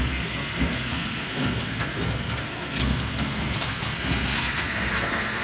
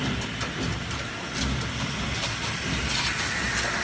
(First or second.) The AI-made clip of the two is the first